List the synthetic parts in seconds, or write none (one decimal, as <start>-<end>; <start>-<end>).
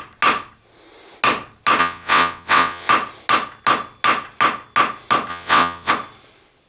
1.8-2.9; 5.3-5.9